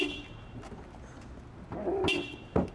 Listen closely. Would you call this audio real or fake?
real